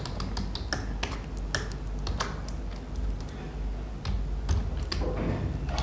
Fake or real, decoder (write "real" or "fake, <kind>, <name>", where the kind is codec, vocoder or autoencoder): real